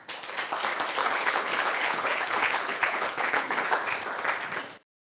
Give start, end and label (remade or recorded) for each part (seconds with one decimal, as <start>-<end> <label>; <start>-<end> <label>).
0.0-1.0 recorded; 1.0-3.9 remade; 3.9-5.1 recorded